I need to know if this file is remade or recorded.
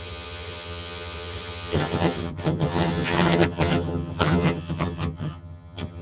remade